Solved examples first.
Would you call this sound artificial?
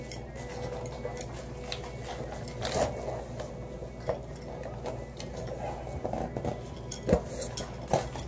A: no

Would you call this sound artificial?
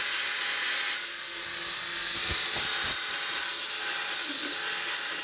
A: no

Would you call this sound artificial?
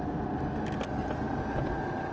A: no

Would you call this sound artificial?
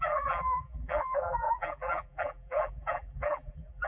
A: yes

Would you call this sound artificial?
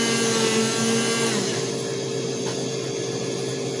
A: no